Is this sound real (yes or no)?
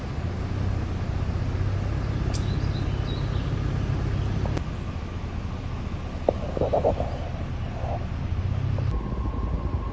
yes